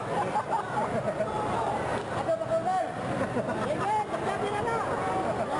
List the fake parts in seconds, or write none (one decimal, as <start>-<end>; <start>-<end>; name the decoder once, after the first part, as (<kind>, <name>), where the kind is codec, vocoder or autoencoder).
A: 0.0-1.9 (vocoder, BigVGAN v2); 2.8-5.6